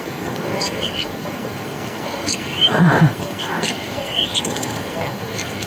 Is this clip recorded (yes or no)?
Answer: no